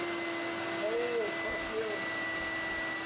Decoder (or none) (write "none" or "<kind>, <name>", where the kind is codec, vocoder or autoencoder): none